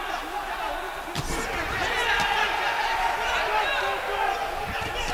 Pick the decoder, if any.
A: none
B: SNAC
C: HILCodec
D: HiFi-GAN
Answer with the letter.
A